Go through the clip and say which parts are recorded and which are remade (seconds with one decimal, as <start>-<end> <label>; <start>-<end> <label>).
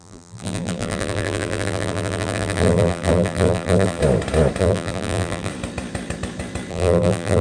0.0-4.0 remade; 4.0-4.6 recorded; 4.6-5.5 remade; 5.5-6.7 recorded; 6.7-7.4 remade